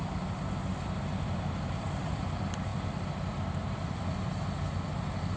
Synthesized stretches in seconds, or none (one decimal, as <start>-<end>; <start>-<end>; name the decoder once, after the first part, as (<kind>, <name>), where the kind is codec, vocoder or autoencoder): none